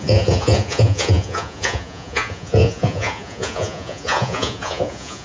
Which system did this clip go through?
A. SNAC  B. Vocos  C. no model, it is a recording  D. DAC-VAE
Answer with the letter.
B